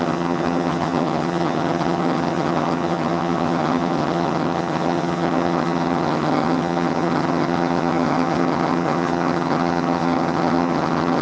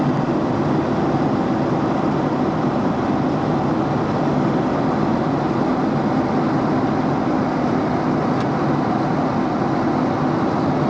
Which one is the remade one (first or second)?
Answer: first